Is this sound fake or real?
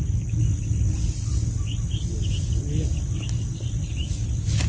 real